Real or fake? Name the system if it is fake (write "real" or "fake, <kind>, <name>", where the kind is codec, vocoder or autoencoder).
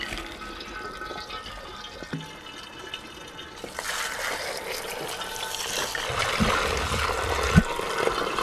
real